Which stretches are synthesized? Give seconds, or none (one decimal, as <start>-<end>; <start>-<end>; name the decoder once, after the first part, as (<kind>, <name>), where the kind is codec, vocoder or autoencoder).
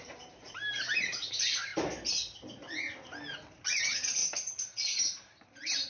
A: 0.0-1.7 (vocoder, BigVGAN v2); 3.8-5.9